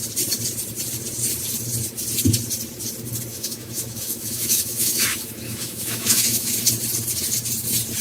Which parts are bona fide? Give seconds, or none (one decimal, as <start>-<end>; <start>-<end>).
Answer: 0.0-3.3; 6.5-8.0

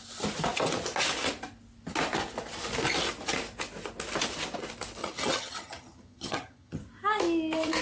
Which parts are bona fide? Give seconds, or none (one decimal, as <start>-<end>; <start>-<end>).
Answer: 0.0-5.0; 6.8-7.8

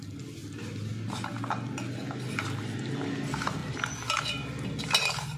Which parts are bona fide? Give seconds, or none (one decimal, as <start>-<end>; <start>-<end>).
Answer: 0.0-5.4

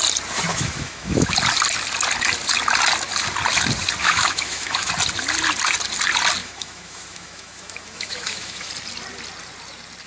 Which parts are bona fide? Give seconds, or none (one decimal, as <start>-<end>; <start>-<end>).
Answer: 0.0-0.5; 1.3-4.0; 4.9-6.4; 8.7-10.1

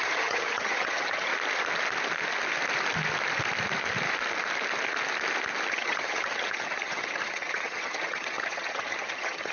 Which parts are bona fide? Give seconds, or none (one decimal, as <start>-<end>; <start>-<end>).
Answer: 1.3-5.7

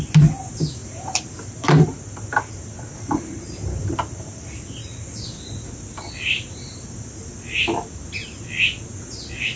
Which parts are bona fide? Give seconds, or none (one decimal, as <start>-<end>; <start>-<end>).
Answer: 0.0-0.8; 4.4-9.6